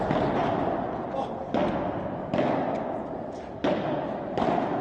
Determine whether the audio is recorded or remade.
recorded